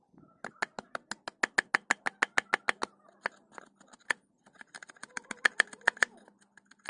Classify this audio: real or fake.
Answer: real